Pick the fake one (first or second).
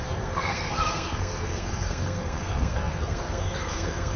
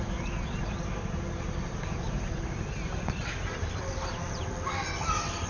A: first